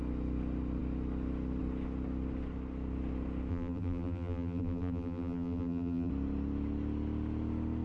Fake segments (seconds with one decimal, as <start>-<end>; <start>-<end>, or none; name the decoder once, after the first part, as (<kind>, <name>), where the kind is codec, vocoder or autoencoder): 3.5-6.1 (vocoder, BigVGAN v2)